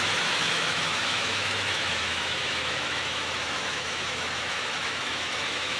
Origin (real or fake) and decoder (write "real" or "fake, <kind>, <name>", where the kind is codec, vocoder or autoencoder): fake, autoencoder, DAC-VAE